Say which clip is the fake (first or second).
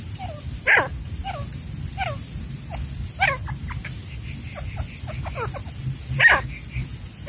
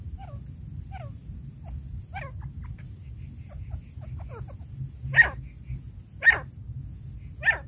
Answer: first